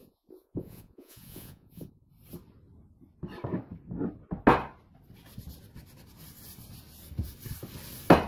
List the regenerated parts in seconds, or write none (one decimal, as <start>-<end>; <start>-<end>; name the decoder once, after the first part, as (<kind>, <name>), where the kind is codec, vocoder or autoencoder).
0.0-2.1 (vocoder, Vocos)